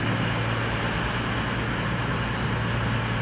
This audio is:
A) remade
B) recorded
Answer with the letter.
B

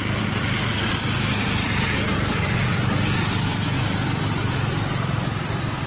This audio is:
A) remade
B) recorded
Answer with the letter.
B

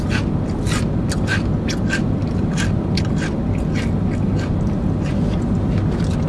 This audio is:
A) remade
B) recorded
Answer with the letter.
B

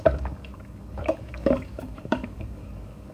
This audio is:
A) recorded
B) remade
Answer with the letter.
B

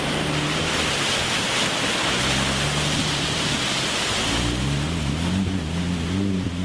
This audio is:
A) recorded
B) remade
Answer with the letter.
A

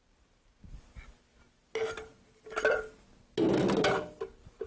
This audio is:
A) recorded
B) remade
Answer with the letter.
A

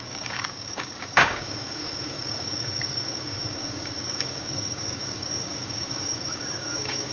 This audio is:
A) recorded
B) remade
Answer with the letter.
B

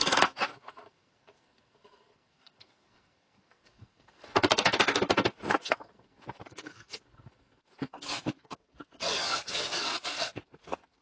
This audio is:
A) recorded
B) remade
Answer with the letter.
B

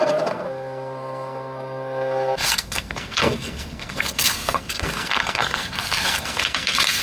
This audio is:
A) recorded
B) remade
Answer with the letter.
B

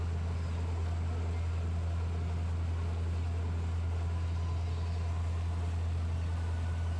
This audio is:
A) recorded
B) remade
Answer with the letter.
A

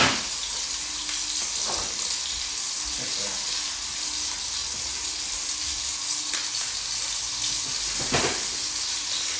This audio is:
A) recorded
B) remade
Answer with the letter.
A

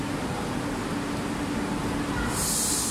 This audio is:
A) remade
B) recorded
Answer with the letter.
B